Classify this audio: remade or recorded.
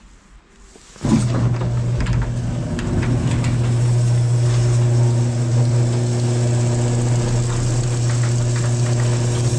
recorded